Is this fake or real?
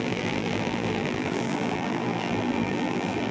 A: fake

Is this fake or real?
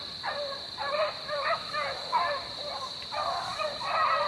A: real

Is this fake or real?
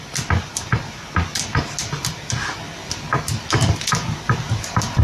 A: real